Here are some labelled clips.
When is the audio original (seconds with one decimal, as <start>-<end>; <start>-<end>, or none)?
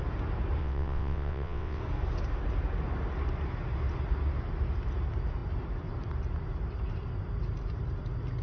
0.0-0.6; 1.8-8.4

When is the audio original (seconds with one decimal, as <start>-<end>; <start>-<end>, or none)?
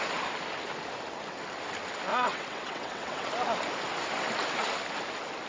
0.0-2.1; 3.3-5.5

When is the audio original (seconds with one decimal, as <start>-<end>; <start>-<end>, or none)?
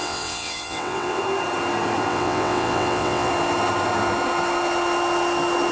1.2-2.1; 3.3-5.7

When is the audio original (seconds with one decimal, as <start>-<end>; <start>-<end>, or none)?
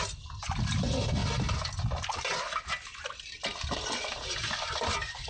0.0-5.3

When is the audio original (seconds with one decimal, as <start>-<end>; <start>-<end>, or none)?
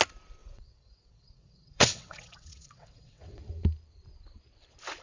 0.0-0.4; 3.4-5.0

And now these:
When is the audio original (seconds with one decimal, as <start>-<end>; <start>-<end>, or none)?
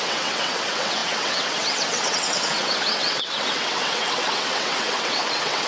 none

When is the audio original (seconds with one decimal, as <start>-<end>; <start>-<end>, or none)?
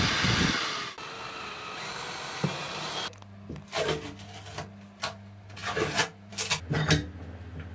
0.0-7.7